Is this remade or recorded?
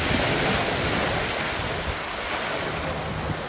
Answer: recorded